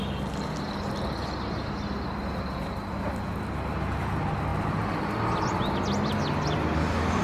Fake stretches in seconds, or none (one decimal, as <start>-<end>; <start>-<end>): none